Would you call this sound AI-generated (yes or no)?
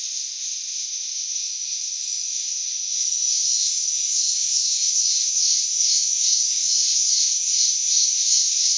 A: yes